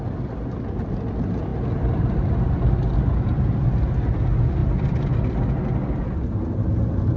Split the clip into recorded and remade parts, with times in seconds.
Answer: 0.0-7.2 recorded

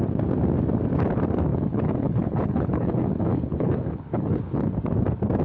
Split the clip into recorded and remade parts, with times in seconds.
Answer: 0.0-1.5 recorded; 1.5-4.7 remade; 4.7-5.4 recorded

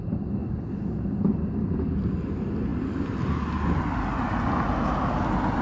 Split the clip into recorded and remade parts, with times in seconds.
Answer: 0.0-5.6 recorded

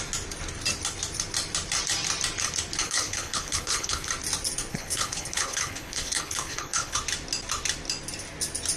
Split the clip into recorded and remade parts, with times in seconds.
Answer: 0.0-2.8 recorded; 2.8-4.1 remade; 4.1-4.7 recorded; 4.7-7.0 remade; 7.0-8.8 recorded